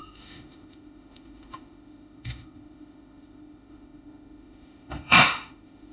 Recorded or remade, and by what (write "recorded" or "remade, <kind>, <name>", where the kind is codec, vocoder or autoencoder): remade, autoencoder, DAC-VAE